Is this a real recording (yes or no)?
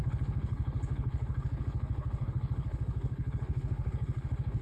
no